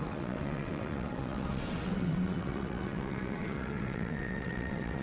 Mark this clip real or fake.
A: fake